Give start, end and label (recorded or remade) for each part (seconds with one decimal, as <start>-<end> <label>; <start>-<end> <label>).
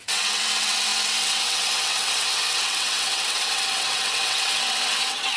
0.0-5.4 remade